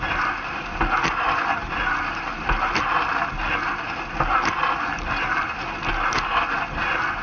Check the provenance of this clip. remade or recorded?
recorded